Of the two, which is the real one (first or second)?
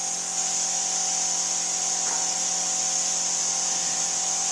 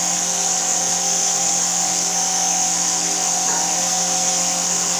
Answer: first